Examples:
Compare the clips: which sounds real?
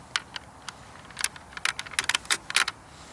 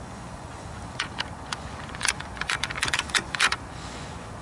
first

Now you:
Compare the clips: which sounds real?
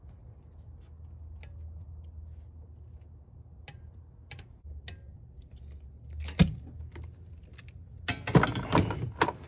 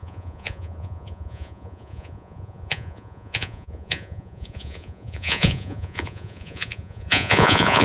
first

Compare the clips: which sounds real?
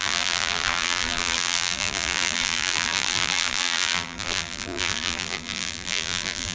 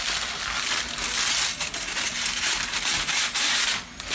second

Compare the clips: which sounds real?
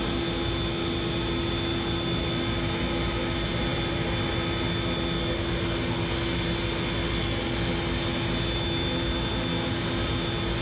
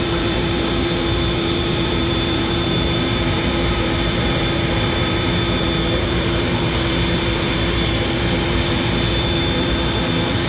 first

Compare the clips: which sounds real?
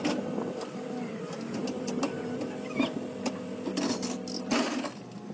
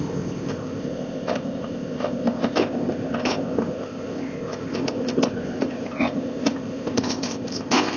first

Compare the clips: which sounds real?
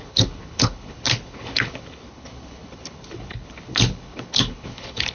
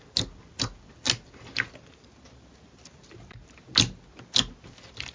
second